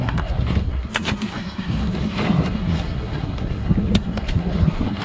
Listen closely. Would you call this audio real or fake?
fake